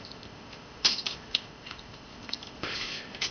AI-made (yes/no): yes